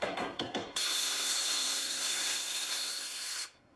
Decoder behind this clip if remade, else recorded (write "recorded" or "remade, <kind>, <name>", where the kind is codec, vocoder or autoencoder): remade, codec, SNAC